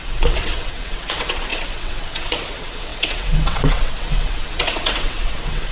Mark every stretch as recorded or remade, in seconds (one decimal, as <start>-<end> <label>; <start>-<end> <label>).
0.0-5.7 remade